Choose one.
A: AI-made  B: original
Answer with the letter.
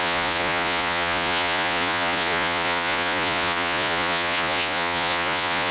A